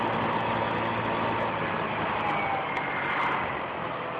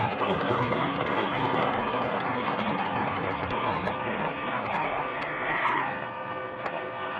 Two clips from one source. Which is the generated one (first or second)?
second